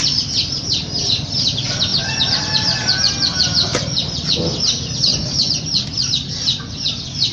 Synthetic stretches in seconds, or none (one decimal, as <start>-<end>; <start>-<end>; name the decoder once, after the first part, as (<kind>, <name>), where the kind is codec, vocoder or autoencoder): 5.1-5.8 (vocoder, Vocos)